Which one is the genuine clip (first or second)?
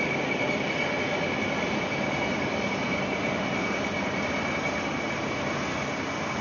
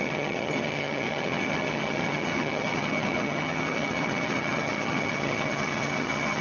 first